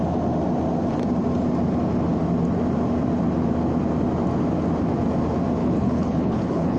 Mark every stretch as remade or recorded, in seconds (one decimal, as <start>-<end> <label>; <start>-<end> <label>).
0.0-5.6 recorded; 5.6-6.8 remade